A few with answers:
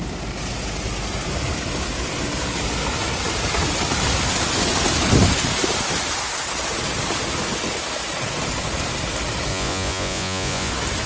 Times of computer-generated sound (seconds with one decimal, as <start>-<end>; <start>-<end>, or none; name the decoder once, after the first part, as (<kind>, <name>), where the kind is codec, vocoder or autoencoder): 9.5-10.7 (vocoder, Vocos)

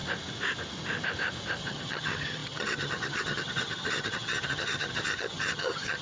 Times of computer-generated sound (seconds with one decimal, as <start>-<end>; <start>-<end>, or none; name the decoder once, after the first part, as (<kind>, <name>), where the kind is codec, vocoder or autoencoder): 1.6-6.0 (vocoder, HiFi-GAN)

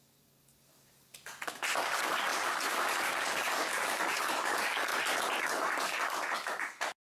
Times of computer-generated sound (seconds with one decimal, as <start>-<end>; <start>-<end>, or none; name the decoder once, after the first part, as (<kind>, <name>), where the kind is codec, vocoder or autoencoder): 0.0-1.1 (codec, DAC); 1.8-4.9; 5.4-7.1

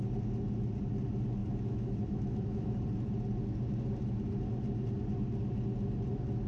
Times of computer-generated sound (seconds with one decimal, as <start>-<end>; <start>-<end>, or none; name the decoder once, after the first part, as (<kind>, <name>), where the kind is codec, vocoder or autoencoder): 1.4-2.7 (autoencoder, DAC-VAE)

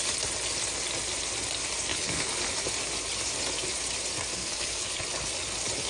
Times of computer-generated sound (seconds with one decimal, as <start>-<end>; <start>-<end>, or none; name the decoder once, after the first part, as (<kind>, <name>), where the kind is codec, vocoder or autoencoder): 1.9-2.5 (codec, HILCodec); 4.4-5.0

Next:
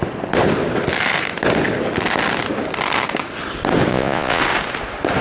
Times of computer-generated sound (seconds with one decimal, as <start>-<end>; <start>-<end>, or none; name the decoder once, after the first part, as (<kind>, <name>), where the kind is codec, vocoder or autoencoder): 3.9-4.4 (vocoder, Vocos)

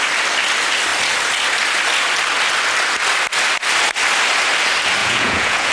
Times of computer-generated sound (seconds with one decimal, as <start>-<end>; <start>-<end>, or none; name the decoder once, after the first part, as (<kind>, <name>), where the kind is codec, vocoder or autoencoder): 5.0-5.7 (vocoder, Vocos)